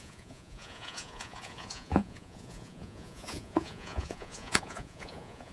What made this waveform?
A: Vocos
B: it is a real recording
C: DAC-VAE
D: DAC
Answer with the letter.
A